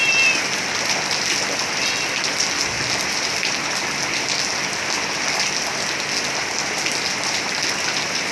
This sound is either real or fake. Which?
real